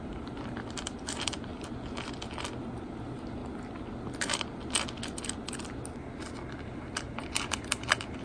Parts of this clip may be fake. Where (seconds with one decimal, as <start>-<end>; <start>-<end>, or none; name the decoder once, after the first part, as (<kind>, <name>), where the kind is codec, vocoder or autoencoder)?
0.0-1.5 (vocoder, BigVGAN v2); 2.9-3.4; 6.6-8.2